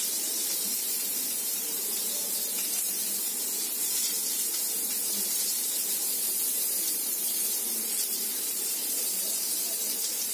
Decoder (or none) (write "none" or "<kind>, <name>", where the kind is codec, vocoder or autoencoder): vocoder, BigVGAN v2